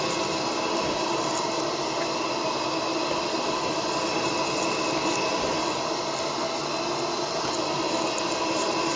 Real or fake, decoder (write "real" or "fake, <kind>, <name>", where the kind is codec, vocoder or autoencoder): real